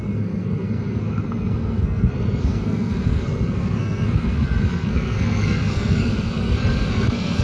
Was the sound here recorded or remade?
remade